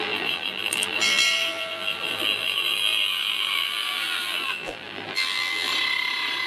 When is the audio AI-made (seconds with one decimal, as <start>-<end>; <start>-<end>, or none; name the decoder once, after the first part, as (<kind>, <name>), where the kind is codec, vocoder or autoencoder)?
0.0-5.7 (vocoder, BigVGAN v2)